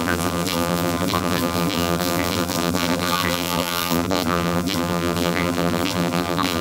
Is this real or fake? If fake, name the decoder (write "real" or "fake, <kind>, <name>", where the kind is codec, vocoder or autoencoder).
fake, vocoder, BigVGAN v2